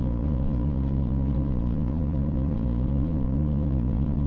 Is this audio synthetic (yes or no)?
yes